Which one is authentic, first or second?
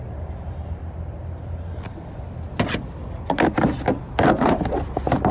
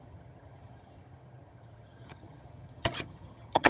first